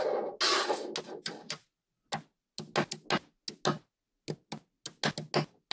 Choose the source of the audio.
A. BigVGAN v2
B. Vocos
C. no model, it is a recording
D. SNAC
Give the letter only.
C